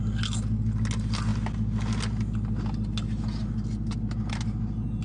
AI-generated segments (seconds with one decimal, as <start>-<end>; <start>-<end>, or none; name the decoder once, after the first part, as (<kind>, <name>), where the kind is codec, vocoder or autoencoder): none